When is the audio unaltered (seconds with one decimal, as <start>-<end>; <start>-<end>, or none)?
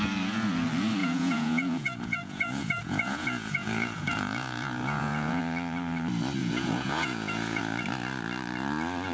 0.0-1.0; 5.4-6.4; 7.6-9.1